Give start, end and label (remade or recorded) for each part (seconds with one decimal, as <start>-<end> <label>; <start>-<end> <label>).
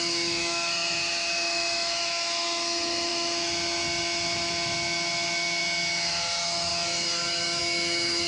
0.0-8.3 remade